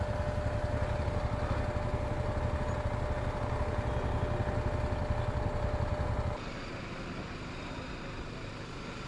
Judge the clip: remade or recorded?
recorded